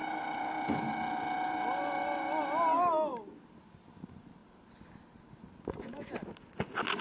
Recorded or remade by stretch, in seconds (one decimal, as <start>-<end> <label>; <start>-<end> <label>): 0.0-7.0 recorded